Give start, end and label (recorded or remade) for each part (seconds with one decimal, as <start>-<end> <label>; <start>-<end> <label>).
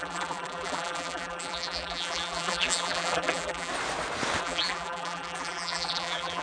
0.0-3.7 remade; 3.7-4.4 recorded; 4.4-6.4 remade